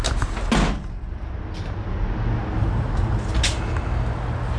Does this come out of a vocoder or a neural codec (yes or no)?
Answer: no